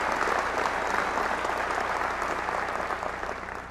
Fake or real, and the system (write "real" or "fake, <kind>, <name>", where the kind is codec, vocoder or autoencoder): real